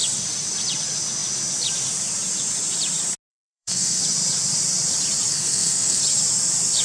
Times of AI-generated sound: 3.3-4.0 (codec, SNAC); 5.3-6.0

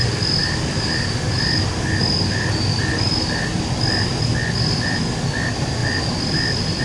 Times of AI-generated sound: none

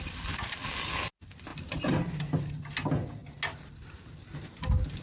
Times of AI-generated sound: none